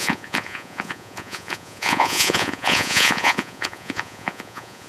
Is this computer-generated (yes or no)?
yes